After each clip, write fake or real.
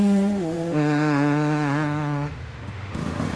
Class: fake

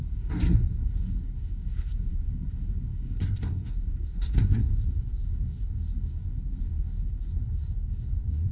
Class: fake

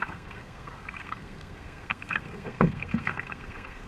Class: fake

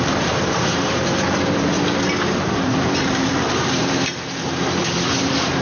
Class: fake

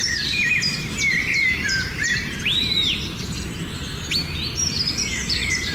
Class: fake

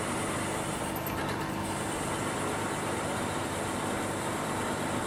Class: real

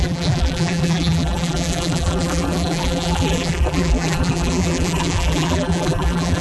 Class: fake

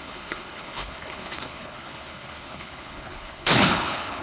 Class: fake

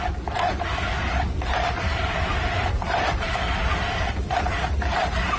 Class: real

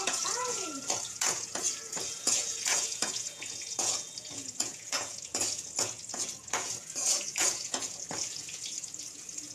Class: fake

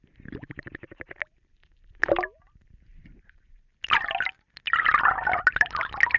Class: real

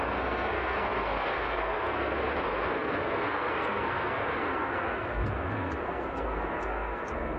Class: fake